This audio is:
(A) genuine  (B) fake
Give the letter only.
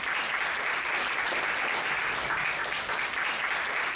A